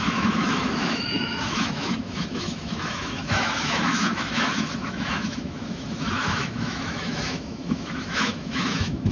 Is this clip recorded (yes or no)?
no